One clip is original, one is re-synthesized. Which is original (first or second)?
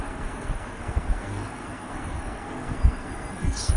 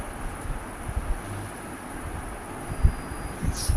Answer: second